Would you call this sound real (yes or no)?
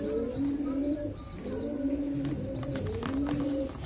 yes